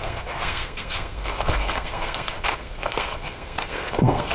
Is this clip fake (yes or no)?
yes